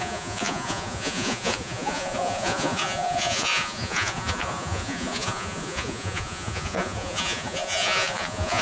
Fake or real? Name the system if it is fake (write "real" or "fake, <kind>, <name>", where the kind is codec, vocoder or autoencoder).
fake, vocoder, Vocos